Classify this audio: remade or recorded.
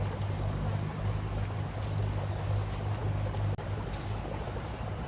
recorded